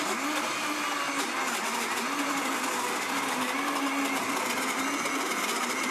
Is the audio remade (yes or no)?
no